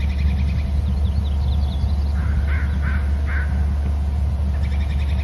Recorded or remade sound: recorded